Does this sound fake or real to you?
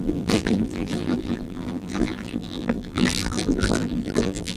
fake